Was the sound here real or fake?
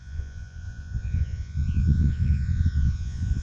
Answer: fake